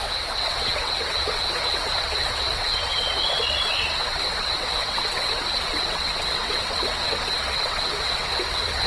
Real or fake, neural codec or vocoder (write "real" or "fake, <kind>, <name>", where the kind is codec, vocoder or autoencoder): fake, vocoder, WaveNeXt